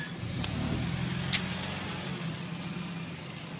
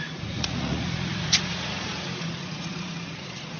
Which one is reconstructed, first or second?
second